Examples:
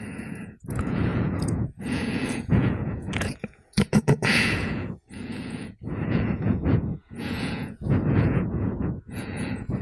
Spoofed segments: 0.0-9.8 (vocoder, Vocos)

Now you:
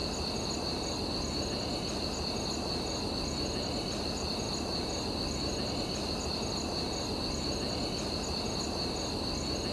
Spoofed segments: none

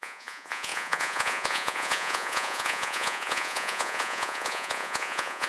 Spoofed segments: 0.0-5.5 (vocoder, Vocos)

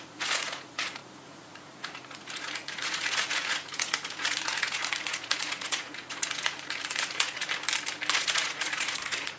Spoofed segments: 0.0-7.4 (vocoder, Vocos); 8.2-9.4

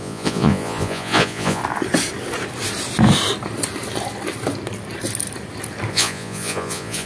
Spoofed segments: 0.0-1.6 (vocoder, Vocos); 5.9-7.1

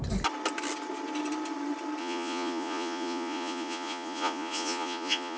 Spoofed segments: 2.0-5.4 (vocoder, Vocos)

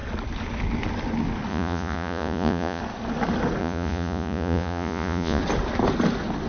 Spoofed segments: 1.5-2.8 (vocoder, Vocos); 3.6-5.4